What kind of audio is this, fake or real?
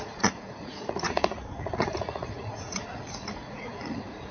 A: fake